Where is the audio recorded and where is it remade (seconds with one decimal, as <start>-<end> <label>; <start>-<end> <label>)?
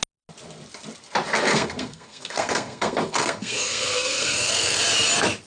0.0-1.5 recorded; 1.5-4.8 remade; 4.8-5.5 recorded